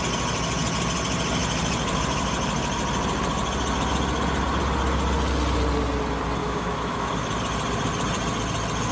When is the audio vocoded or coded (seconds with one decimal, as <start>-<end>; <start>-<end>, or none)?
6.4-7.1